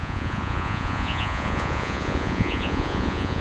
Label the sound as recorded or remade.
remade